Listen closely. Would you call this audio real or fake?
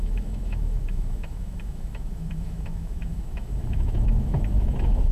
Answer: fake